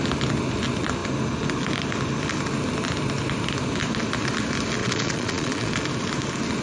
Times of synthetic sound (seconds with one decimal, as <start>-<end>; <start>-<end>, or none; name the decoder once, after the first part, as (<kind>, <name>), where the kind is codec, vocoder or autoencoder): 4.8-5.7 (vocoder, Vocos)